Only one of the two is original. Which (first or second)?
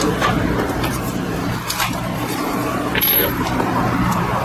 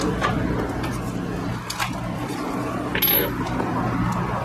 second